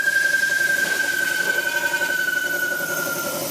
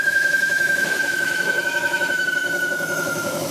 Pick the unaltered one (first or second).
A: first